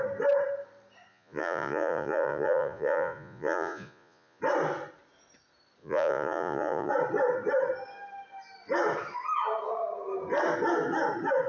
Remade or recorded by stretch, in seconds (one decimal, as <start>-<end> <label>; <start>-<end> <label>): 0.0-1.1 recorded; 1.1-4.4 remade; 4.4-5.8 recorded; 5.8-6.9 remade; 6.9-11.5 recorded